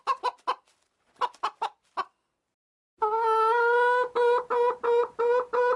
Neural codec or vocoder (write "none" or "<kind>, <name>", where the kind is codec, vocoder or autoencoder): none